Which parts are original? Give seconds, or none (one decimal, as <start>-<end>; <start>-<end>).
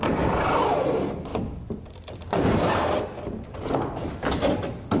0.0-5.0